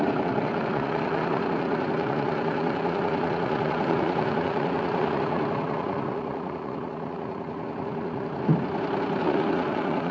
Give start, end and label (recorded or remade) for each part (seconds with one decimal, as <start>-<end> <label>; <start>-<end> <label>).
0.0-8.5 remade; 8.5-9.2 recorded; 9.2-10.1 remade